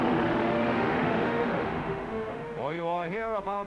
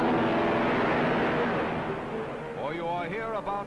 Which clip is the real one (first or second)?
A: second